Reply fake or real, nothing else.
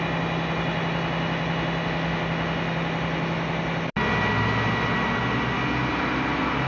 real